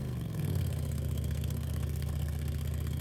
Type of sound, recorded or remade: remade